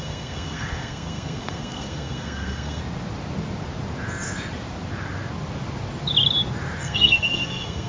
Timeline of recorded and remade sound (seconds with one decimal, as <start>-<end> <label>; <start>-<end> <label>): 0.0-2.8 remade; 2.8-6.8 recorded; 6.8-7.9 remade